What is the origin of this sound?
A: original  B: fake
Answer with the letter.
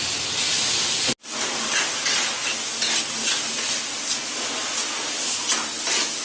A